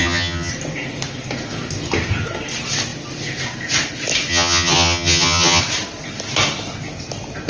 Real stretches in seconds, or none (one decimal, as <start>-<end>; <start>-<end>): 0.5-4.3; 5.6-7.5